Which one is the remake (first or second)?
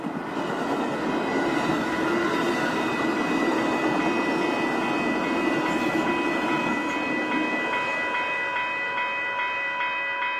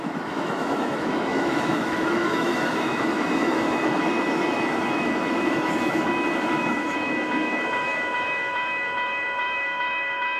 second